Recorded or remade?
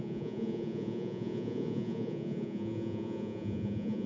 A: remade